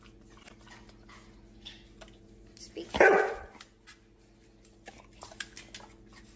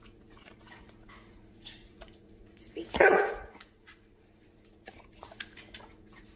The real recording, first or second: first